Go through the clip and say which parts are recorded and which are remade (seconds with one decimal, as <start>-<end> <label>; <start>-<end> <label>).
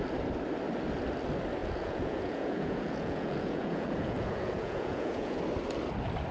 0.0-1.6 recorded; 1.6-5.4 remade; 5.4-6.3 recorded